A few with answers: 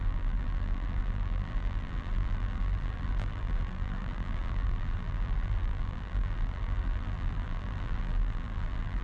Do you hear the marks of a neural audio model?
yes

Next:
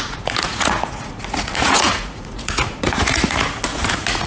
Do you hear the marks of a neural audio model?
yes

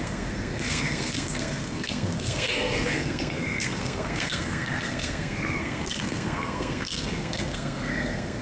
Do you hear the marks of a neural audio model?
yes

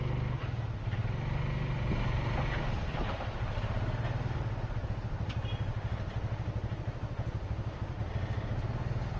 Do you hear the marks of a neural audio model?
no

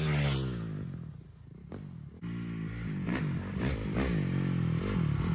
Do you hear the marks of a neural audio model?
no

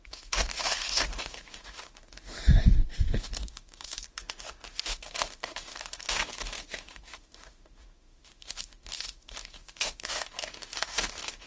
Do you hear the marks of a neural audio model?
yes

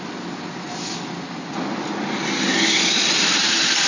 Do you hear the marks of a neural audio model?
no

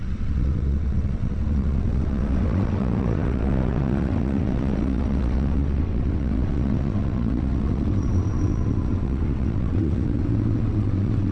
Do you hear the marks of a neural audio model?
yes